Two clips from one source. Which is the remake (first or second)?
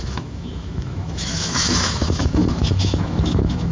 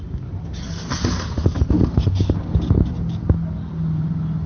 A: first